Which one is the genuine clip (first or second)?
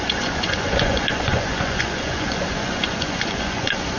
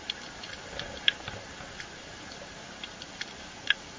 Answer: second